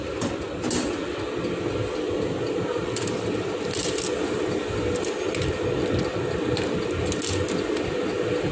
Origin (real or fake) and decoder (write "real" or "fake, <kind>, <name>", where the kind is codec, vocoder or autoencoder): real